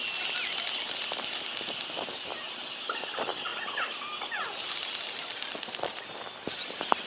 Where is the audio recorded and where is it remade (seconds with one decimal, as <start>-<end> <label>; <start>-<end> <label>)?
0.0-7.1 recorded